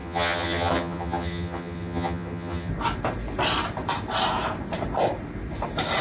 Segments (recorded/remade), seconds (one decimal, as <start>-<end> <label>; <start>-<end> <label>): 0.0-2.7 remade; 2.7-6.0 recorded

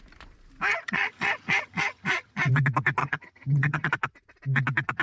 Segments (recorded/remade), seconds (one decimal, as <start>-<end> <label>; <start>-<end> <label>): 0.0-0.7 recorded; 0.7-2.5 remade; 2.5-3.0 recorded; 3.0-3.9 remade; 3.9-5.0 recorded

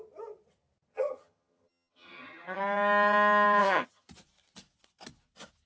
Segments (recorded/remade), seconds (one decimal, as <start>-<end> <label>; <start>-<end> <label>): 0.0-0.9 recorded; 0.9-2.6 remade; 2.6-3.6 recorded; 3.6-4.1 remade; 4.1-5.7 recorded

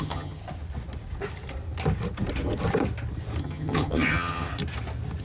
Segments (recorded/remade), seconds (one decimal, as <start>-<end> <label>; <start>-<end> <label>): 0.0-0.4 remade; 0.4-3.4 recorded; 3.4-4.5 remade; 4.5-5.2 recorded

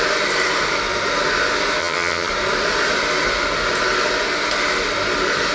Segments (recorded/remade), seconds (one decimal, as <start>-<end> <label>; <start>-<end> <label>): 0.0-1.8 recorded; 1.8-2.3 remade; 2.3-5.5 recorded

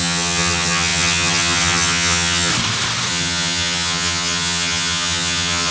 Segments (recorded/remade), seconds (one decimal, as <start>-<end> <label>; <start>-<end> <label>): 0.0-2.5 remade; 2.5-3.1 recorded; 3.1-5.7 remade

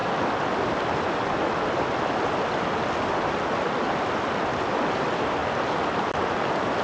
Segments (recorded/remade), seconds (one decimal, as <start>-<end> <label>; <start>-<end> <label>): 0.0-6.8 recorded

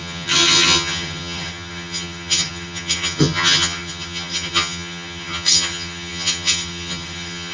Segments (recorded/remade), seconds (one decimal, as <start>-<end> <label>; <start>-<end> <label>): 0.0-7.5 remade